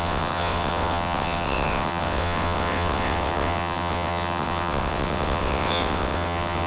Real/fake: fake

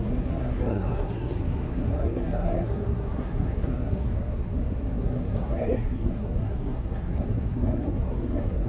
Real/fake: fake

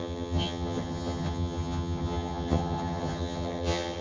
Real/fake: fake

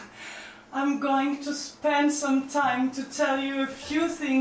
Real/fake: real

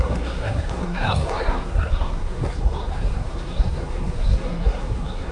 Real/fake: fake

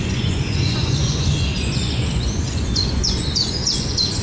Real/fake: fake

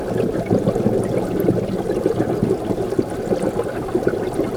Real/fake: real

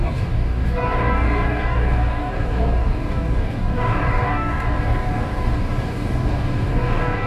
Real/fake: fake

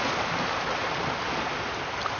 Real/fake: real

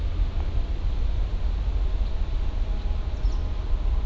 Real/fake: real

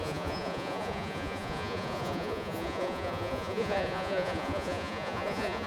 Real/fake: fake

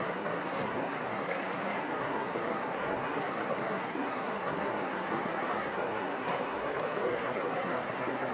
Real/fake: fake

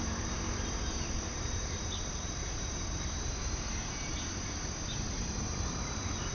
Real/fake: fake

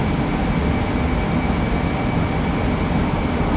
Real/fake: real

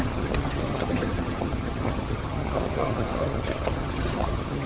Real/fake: fake